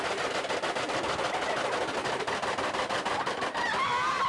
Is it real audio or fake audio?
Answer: real